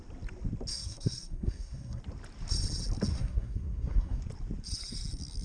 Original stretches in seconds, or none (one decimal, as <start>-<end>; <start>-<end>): 0.0-0.7; 2.0-3.1; 4.2-5.4